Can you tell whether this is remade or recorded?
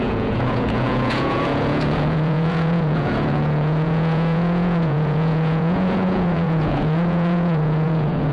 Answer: remade